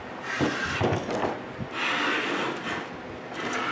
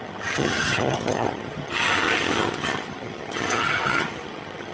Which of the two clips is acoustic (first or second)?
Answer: first